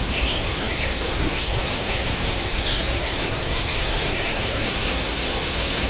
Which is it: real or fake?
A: fake